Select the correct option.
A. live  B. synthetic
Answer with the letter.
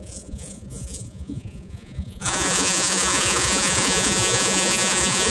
B